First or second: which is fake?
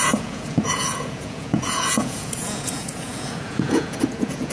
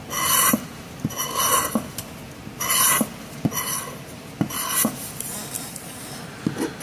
first